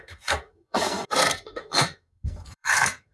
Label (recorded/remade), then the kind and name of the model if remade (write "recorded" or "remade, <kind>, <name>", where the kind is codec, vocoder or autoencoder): remade, codec, SNAC